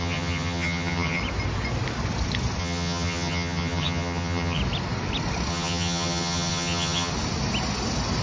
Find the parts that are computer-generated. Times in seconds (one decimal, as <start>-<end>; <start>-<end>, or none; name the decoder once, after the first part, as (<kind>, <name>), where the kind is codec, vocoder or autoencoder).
0.0-1.2 (vocoder, HiFi-GAN); 2.6-4.6; 5.5-7.1